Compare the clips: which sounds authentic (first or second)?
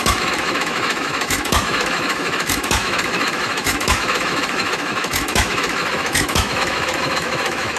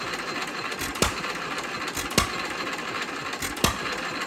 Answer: second